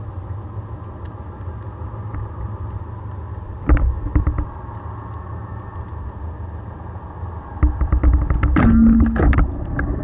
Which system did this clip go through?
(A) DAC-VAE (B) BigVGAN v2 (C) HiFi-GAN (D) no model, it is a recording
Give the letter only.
D